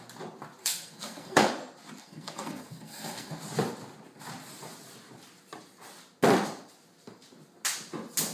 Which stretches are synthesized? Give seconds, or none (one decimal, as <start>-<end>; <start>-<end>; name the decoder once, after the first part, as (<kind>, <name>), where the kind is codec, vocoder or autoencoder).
0.6-1.5 (codec, SNAC); 2.0-3.4